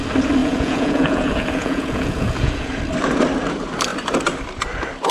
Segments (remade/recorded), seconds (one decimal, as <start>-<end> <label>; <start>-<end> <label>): 0.0-0.4 recorded; 0.4-2.8 remade; 2.8-5.1 recorded